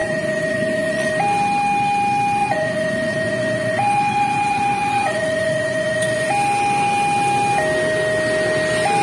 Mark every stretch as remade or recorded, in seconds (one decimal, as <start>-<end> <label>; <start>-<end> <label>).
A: 0.0-1.1 remade; 1.1-2.4 recorded; 2.4-6.3 remade; 6.3-9.0 recorded